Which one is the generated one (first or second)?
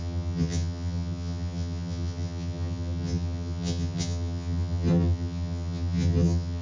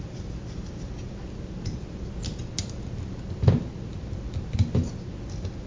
first